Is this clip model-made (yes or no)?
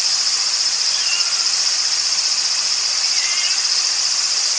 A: yes